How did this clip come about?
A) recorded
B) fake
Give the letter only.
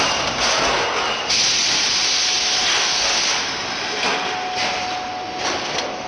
A